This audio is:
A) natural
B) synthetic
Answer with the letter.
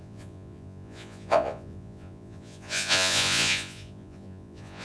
B